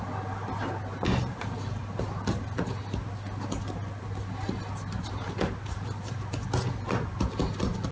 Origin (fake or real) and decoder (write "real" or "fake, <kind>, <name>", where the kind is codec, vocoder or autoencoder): real